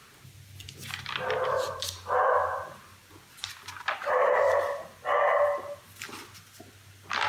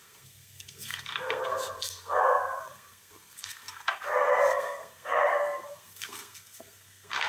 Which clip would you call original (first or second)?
first